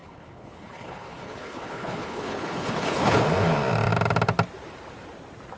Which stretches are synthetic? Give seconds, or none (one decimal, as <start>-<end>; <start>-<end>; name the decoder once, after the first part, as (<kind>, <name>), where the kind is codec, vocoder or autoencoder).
0.0-3.2 (codec, HILCodec)